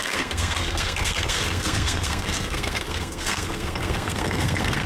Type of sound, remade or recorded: remade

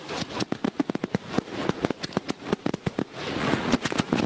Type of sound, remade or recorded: remade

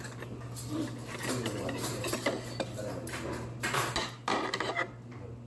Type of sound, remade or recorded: recorded